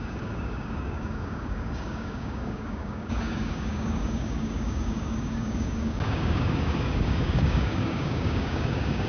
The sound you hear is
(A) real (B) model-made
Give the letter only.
B